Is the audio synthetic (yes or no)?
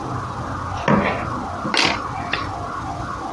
no